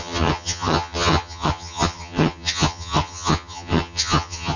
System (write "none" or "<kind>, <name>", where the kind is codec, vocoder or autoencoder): vocoder, HiFi-GAN